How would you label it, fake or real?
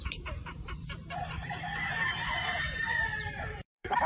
fake